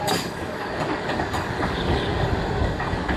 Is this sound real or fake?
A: fake